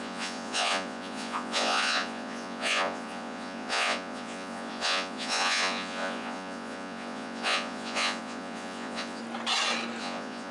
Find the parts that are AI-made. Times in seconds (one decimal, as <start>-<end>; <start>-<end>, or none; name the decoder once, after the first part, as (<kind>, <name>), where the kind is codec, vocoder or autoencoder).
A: 0.0-9.2 (vocoder, Vocos); 10.0-10.5